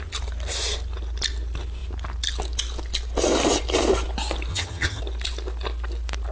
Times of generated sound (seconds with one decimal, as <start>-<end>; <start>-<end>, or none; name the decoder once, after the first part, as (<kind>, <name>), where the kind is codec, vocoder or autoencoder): 4.5-5.0 (vocoder, HiFi-GAN)